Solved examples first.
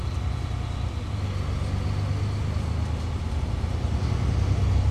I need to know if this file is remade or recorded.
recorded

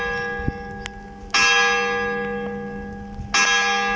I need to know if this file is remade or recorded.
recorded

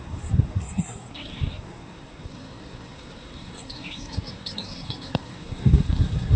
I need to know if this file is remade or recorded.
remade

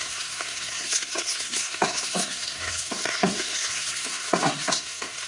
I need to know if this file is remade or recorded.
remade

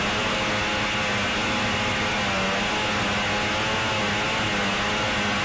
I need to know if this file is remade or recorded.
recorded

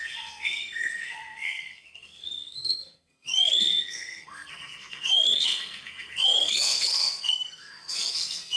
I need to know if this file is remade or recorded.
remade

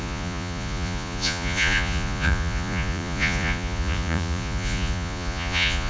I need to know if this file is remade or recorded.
remade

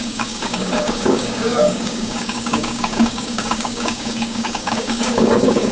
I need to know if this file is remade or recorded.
remade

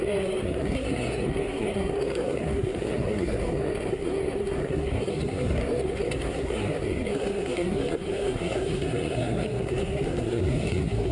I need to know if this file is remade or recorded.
remade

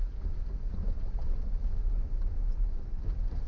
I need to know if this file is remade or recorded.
recorded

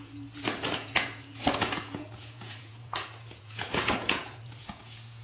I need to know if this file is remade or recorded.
remade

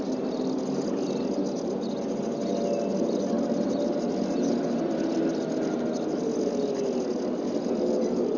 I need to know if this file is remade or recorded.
recorded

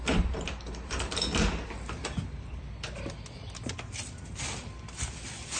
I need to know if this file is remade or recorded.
recorded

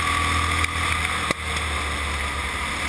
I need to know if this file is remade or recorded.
recorded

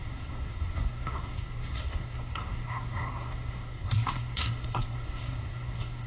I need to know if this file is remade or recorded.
remade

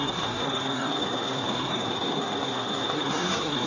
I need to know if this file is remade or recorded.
remade